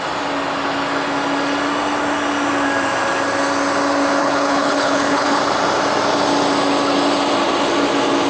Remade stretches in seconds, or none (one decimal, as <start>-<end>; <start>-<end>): 4.2-5.4